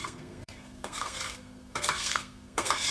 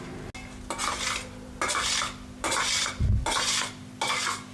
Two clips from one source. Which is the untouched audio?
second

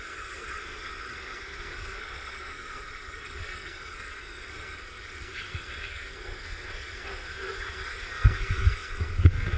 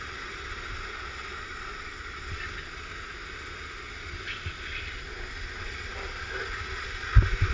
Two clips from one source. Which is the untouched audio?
second